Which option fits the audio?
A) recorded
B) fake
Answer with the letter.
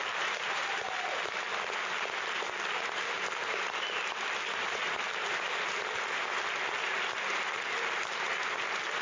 A